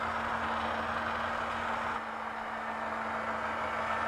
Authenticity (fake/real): real